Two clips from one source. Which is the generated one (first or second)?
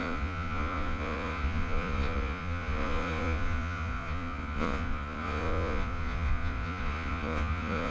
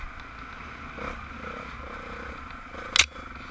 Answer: first